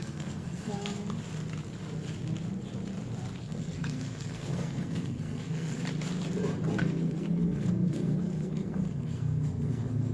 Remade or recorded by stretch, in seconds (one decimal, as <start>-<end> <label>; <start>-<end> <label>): 0.0-1.0 remade; 1.0-3.4 recorded; 3.4-5.8 remade; 5.8-6.8 recorded; 6.8-10.1 remade